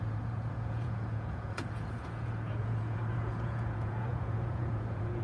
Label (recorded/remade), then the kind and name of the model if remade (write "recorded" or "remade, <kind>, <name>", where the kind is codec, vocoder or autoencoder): remade, vocoder, Vocos